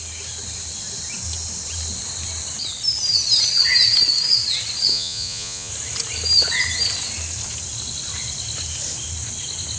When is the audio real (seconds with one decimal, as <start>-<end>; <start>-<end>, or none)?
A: 0.0-4.9; 5.7-9.8